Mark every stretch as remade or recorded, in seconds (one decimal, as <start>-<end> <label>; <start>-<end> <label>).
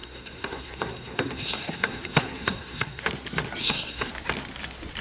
0.0-3.0 remade; 3.0-3.6 recorded; 3.6-4.1 remade; 4.1-5.0 recorded